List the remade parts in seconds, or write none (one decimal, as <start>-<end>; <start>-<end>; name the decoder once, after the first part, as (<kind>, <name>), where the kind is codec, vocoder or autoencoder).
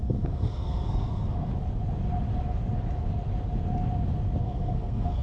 0.0-1.5 (codec, SNAC); 4.4-5.2